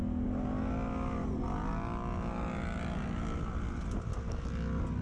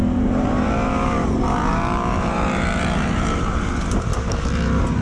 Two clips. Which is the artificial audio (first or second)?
second